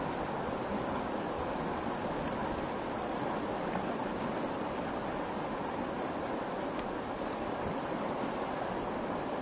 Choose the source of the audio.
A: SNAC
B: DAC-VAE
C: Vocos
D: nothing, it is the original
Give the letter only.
D